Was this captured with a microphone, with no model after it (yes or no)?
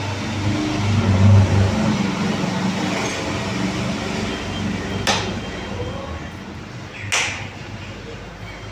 yes